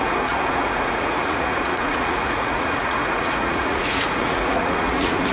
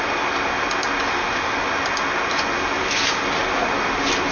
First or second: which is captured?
second